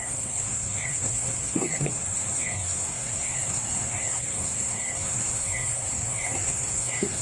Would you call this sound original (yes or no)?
no